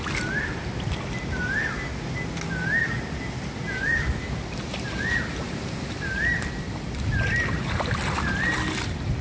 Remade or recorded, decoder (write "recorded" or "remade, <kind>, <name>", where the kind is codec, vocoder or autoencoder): recorded